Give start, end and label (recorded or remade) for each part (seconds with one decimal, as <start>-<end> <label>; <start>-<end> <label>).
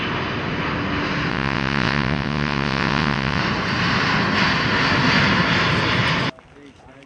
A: 0.0-1.3 recorded; 1.3-3.4 remade; 3.4-7.1 recorded